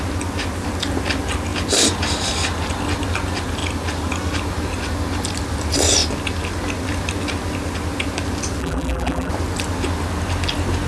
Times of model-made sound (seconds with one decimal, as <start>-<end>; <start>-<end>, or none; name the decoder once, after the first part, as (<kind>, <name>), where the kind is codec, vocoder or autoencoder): 8.6-9.3 (vocoder, BigVGAN v2)